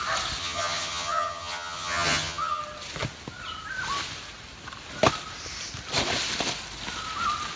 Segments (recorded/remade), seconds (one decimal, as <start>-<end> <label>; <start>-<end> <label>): 0.0-0.4 recorded; 0.4-2.6 remade; 2.6-7.6 recorded